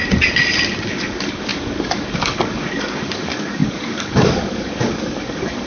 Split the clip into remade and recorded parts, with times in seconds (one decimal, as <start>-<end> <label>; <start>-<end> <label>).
0.0-0.9 recorded; 0.9-5.7 remade